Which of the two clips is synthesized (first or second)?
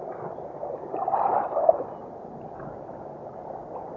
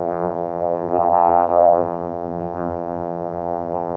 second